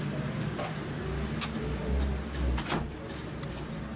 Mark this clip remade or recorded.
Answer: recorded